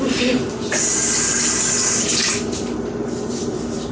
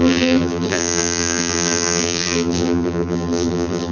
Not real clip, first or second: second